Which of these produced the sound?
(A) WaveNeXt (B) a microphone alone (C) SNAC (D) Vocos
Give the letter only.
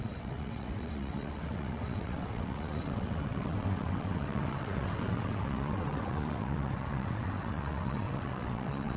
A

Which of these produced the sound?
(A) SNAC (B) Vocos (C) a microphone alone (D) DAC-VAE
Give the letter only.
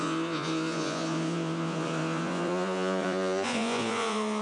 B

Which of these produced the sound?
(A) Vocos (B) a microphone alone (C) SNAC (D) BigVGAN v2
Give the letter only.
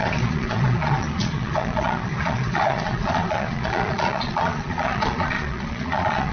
A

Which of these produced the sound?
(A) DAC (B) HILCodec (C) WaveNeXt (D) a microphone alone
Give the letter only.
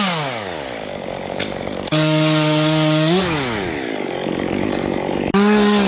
A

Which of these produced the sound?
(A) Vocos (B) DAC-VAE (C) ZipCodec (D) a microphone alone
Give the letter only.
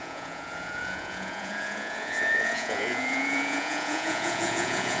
A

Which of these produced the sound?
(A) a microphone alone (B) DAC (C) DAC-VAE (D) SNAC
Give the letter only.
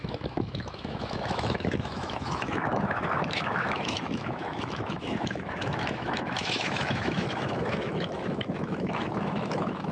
C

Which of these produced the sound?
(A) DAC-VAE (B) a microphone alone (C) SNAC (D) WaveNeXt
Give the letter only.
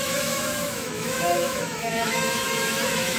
A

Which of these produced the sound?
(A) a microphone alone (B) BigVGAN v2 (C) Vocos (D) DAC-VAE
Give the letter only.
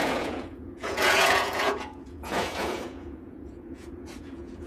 C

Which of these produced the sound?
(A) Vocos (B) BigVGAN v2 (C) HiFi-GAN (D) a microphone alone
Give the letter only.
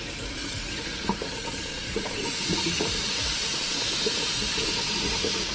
A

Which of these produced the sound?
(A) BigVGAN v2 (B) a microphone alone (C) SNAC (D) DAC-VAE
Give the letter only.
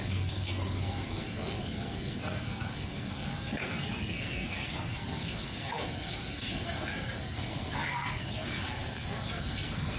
C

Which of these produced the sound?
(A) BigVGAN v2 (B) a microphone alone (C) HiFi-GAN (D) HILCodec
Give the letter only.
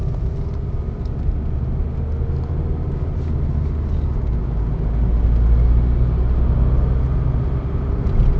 B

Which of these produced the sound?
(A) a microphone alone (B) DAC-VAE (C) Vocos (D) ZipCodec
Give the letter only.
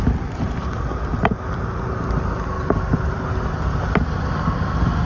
A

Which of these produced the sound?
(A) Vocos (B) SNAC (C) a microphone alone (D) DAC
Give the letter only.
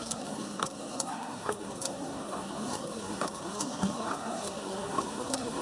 B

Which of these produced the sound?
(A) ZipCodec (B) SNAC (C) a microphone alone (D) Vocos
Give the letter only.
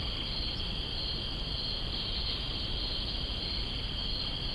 C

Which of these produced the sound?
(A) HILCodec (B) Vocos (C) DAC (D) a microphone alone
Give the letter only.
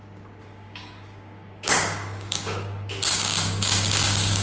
C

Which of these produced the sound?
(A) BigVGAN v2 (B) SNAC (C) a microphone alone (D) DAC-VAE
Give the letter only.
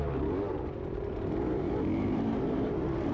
A